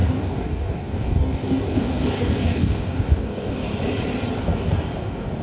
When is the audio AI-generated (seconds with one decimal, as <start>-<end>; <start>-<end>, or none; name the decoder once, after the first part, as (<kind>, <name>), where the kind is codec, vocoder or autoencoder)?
0.0-3.7 (codec, DAC); 4.4-5.4